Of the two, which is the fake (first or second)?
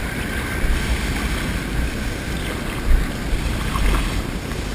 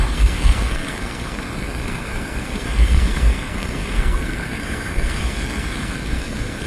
second